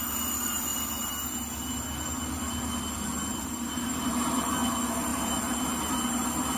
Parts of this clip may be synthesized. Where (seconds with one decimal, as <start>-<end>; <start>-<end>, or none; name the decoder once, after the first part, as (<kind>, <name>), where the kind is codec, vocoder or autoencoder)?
0.7-1.2 (vocoder, BigVGAN v2); 3.3-4.0